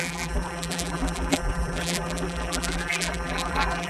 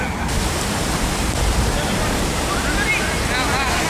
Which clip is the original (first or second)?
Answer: second